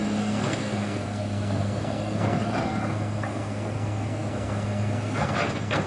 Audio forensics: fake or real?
fake